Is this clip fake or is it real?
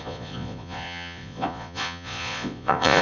fake